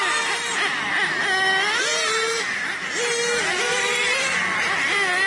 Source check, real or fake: real